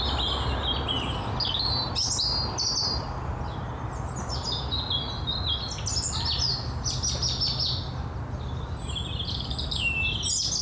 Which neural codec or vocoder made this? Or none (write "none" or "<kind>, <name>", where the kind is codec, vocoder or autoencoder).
none